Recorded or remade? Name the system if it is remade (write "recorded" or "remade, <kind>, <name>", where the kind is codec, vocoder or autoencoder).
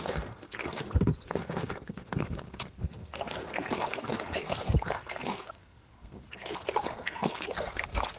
remade, codec, SNAC